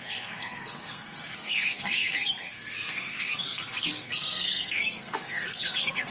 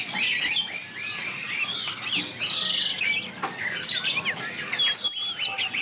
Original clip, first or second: second